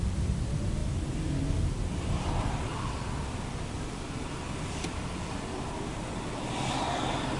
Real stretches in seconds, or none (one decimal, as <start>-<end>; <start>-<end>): 0.8-1.9